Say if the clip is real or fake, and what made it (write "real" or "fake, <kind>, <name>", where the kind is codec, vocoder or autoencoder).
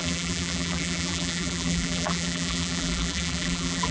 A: fake, vocoder, BigVGAN v2